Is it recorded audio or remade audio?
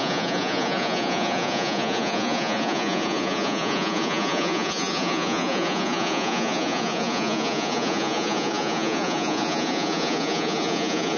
remade